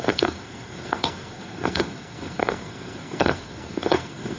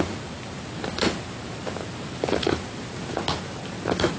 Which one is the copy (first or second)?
first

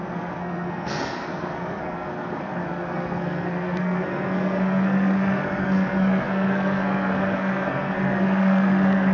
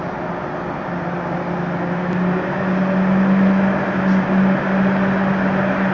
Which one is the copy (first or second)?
first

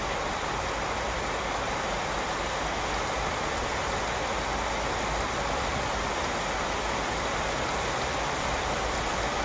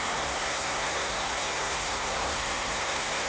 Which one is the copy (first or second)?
second